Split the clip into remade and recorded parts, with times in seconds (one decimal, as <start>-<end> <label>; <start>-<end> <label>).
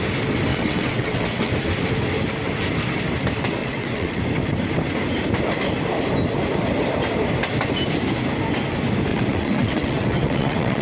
0.0-0.5 recorded; 0.5-1.5 remade; 1.5-3.6 recorded; 3.6-4.2 remade; 4.2-9.1 recorded; 9.1-10.8 remade